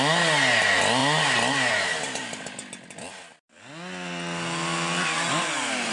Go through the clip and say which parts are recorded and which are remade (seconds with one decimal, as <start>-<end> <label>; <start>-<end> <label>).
0.0-5.9 recorded